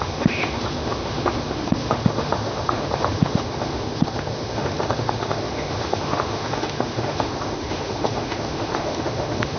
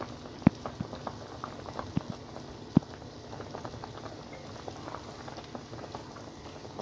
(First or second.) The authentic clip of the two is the second